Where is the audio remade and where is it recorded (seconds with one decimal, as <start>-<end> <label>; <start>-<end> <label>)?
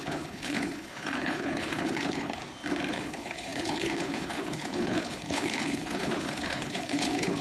0.0-2.4 remade; 2.4-2.9 recorded; 2.9-7.4 remade